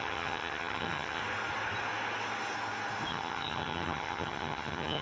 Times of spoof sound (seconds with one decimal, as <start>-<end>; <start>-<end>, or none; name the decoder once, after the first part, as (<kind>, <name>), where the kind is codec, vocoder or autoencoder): 0.0-1.2 (vocoder, HiFi-GAN); 3.1-5.0